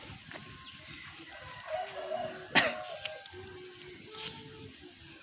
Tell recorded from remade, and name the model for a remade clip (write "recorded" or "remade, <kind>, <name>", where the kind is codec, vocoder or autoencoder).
recorded